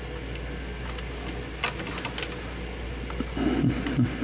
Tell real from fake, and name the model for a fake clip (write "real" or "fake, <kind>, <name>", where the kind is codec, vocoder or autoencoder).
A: real